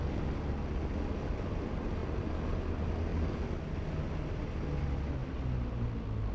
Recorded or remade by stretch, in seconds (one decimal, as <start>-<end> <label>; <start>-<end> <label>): 0.0-6.3 recorded